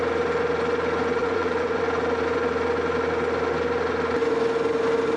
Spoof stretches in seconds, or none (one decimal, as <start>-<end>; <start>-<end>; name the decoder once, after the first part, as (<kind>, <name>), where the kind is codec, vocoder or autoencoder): 1.2-1.8 (vocoder, Vocos)